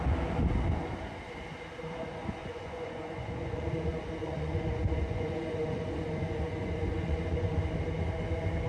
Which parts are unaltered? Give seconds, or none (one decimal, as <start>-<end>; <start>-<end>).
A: 0.0-2.4; 7.6-8.7